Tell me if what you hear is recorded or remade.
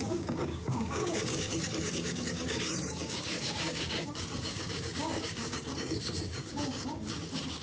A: remade